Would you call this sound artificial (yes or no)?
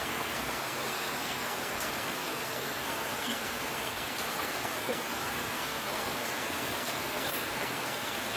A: yes